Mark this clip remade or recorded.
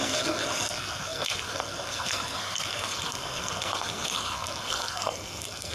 remade